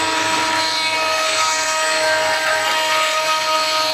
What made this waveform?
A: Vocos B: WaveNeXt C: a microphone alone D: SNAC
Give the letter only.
D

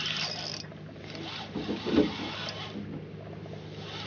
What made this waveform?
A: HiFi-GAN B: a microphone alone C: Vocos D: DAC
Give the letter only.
B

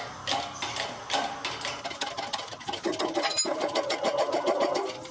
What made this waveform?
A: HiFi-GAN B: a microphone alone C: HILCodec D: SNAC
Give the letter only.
B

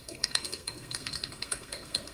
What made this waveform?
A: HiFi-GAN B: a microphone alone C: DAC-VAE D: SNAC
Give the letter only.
D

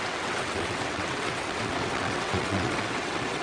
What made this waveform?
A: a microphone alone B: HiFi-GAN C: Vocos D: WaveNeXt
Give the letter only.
D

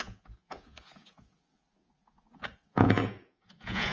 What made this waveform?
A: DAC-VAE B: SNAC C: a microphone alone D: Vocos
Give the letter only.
D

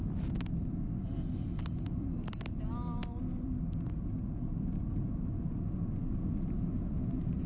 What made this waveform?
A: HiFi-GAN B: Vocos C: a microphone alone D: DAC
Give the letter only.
C